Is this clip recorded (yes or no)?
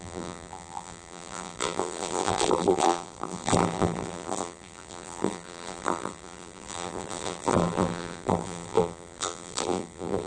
no